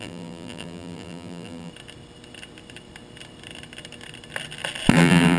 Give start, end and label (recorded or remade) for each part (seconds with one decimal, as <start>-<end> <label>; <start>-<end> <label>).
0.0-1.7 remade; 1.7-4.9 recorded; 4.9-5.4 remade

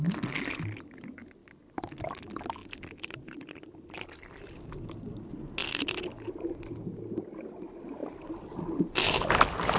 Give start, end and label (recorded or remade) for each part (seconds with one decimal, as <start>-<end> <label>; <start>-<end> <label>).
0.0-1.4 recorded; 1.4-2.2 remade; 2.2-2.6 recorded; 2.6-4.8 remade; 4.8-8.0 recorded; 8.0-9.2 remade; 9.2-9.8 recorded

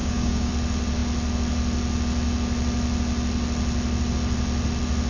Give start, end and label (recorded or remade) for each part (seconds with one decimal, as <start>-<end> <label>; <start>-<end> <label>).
0.0-0.5 remade; 0.5-5.1 recorded

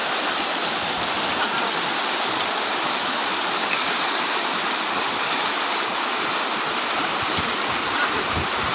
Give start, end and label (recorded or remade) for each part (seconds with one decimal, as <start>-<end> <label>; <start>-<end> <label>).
0.0-3.9 recorded; 3.9-8.7 remade

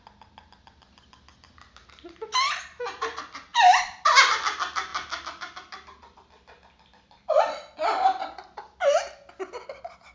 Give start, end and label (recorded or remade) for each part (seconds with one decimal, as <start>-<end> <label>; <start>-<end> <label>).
0.0-10.1 recorded